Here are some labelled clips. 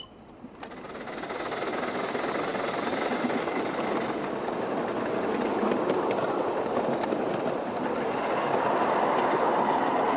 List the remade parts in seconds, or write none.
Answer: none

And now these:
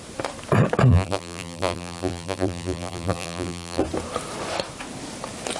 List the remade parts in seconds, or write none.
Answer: 0.9-3.8 (vocoder, BigVGAN v2)

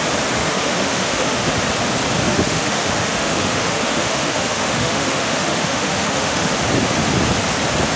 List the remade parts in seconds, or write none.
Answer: 0.4-1.5 (autoencoder, DAC-VAE); 2.3-6.5

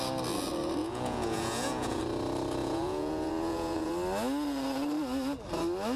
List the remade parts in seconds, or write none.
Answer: 0.8-2.0 (vocoder, Vocos); 2.6-3.9

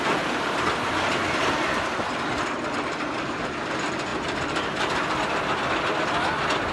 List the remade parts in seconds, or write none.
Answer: none

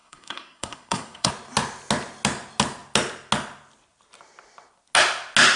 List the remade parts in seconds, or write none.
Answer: 0.0-1.3 (codec, SNAC)